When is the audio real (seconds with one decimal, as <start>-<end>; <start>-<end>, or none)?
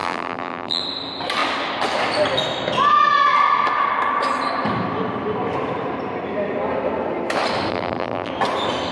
0.8-7.7; 8.3-8.9